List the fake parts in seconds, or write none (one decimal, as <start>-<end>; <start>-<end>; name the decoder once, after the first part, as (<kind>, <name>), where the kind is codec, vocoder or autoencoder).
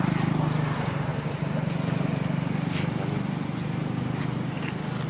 none